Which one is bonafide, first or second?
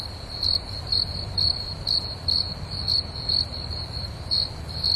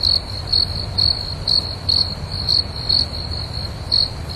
second